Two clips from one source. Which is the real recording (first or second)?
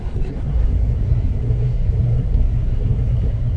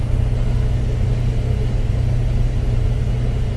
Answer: second